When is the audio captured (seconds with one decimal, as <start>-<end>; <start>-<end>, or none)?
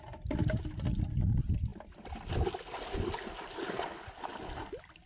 0.0-5.1